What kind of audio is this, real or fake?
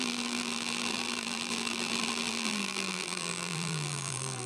fake